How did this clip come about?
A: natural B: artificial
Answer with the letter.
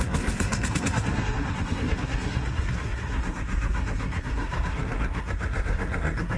B